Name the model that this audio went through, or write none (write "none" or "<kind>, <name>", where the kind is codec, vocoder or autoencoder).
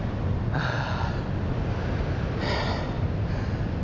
none